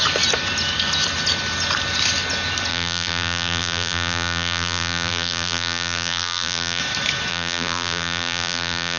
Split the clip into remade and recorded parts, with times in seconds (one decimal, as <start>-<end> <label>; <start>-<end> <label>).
0.0-2.7 recorded; 2.7-6.8 remade; 6.8-7.3 recorded; 7.3-9.0 remade